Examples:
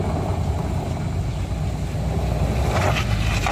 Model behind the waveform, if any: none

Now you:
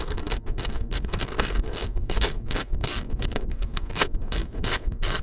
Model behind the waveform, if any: codec, SNAC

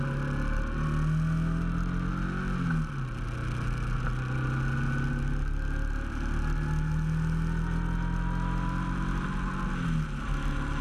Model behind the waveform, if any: none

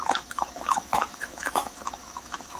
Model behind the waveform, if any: autoencoder, DAC-VAE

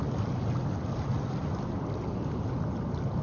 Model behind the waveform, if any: none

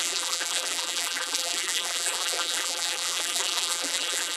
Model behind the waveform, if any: vocoder, BigVGAN v2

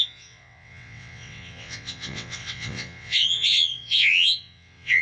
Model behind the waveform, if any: vocoder, WaveNeXt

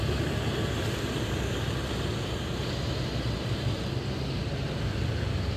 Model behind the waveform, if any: none